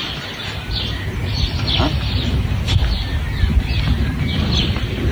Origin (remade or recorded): recorded